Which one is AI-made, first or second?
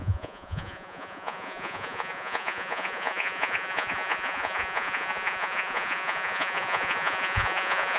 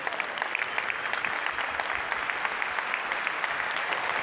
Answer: first